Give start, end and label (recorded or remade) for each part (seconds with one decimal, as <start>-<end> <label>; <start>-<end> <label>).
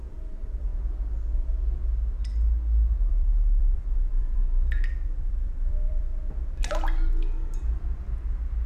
0.0-0.7 remade; 0.7-3.1 recorded; 3.1-4.4 remade; 4.4-5.1 recorded; 5.1-6.1 remade; 6.1-8.7 recorded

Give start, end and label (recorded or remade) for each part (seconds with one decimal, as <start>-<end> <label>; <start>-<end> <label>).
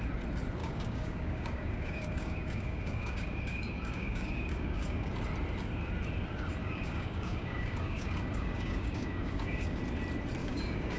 0.0-0.6 recorded; 0.6-5.1 remade; 5.1-6.6 recorded; 6.6-9.8 remade; 9.8-10.4 recorded; 10.4-11.0 remade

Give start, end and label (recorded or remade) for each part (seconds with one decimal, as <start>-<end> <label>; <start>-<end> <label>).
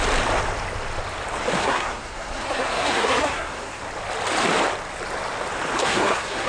0.0-1.6 recorded; 1.6-3.8 remade; 3.8-5.8 recorded; 5.8-6.5 remade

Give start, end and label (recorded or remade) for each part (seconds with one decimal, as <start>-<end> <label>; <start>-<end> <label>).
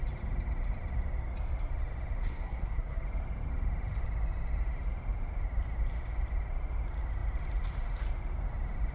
0.0-2.2 recorded; 2.2-3.0 remade; 3.0-8.9 recorded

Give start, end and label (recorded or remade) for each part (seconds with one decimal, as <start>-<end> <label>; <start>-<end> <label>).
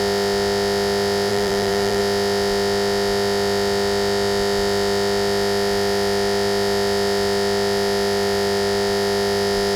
0.0-1.3 recorded; 1.3-2.0 remade; 2.0-9.8 recorded